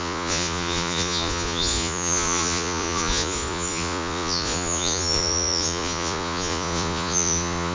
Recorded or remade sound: remade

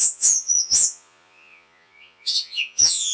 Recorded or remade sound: remade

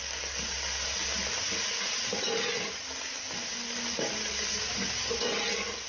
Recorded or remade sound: recorded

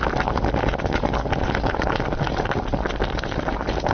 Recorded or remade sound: recorded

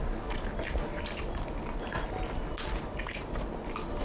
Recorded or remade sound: recorded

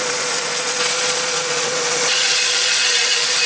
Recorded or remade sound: remade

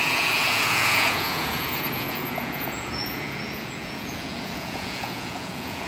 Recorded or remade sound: remade